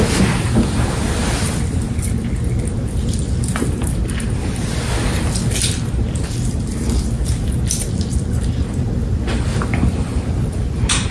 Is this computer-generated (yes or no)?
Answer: no